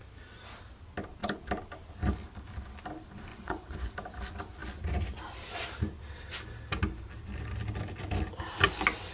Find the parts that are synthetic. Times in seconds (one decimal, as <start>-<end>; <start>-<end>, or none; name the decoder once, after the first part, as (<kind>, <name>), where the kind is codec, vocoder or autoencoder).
3.3-3.9 (vocoder, Vocos)